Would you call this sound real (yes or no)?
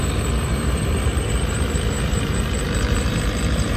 no